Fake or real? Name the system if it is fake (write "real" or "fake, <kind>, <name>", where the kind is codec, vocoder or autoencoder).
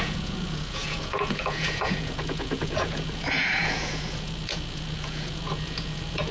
fake, vocoder, Vocos